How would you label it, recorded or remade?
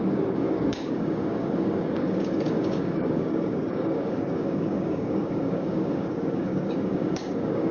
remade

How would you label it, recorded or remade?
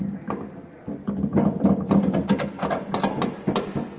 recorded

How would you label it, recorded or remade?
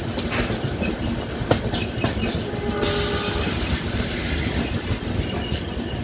recorded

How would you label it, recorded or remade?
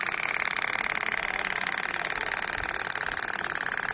recorded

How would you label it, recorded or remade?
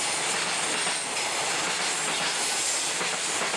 recorded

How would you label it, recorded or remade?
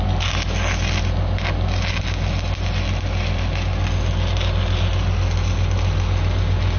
recorded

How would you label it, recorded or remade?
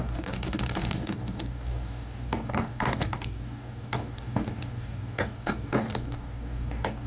remade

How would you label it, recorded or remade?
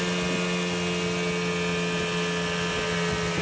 recorded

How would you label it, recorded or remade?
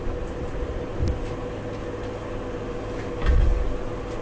recorded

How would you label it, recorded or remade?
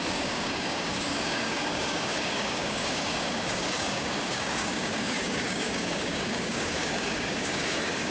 remade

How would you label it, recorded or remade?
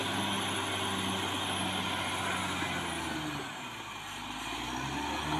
recorded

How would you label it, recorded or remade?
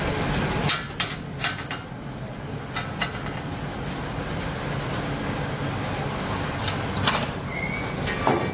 recorded